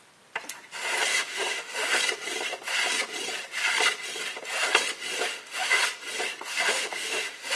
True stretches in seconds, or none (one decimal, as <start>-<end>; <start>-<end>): 0.0-1.1; 2.0-5.3; 5.8-6.5